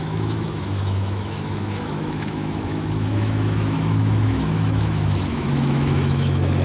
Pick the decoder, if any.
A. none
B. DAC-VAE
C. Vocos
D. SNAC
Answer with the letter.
B